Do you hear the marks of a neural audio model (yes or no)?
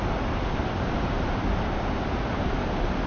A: no